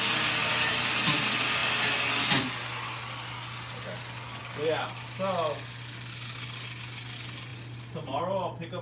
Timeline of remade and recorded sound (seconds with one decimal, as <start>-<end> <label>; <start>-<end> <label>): 0.0-8.8 recorded

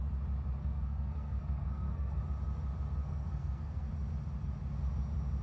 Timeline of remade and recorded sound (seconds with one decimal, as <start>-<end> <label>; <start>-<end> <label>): 0.0-0.6 recorded; 0.6-2.2 remade; 2.2-3.0 recorded; 3.0-3.9 remade; 3.9-5.4 recorded

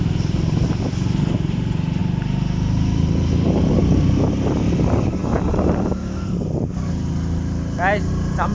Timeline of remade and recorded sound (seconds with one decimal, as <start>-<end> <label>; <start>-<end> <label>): 0.0-8.5 recorded

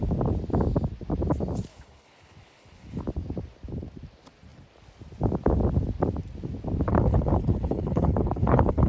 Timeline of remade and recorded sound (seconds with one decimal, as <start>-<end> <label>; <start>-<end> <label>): 0.0-1.7 recorded; 1.7-3.0 remade; 3.0-6.9 recorded; 6.9-8.9 remade

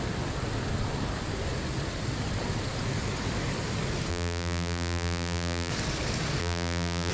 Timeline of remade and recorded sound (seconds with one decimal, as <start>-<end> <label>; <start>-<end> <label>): 0.0-4.1 recorded; 4.1-5.7 remade; 5.7-6.4 recorded; 6.4-7.1 remade

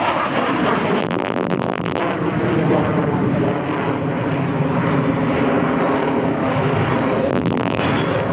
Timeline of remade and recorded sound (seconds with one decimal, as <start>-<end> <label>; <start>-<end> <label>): 0.0-1.0 recorded; 1.0-2.0 remade; 2.0-7.3 recorded; 7.3-7.8 remade; 7.8-8.3 recorded

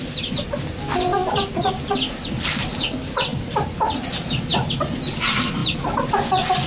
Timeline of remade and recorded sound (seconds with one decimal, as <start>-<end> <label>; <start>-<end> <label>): 0.0-6.7 recorded